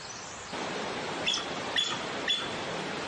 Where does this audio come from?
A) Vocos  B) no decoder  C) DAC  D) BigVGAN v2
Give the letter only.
D